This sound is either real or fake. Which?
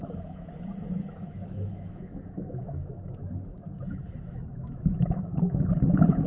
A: fake